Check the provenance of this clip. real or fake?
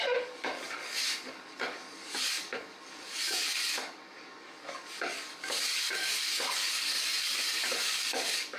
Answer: fake